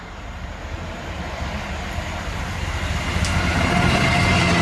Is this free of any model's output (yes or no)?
yes